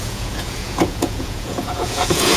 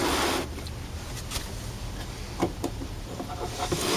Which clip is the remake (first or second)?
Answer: first